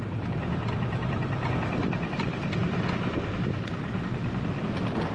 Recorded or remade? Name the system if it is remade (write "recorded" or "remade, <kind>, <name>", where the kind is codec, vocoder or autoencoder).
recorded